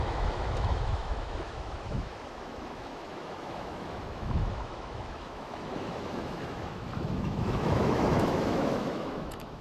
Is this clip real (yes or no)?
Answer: no